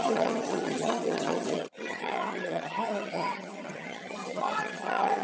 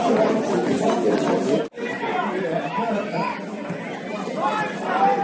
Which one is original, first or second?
second